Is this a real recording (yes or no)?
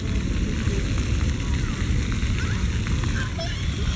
yes